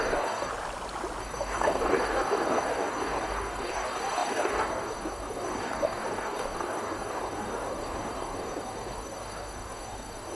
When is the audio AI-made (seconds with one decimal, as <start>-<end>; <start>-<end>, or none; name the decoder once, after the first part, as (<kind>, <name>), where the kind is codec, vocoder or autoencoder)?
0.0-0.5 (codec, DAC); 1.2-10.4